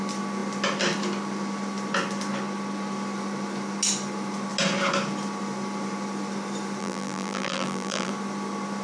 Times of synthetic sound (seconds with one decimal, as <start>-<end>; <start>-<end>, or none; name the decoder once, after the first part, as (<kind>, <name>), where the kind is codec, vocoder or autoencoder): 6.8-8.1 (vocoder, BigVGAN v2)

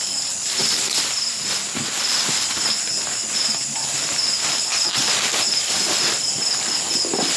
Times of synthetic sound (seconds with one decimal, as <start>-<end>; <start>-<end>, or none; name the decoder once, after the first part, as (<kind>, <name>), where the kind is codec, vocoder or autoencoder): none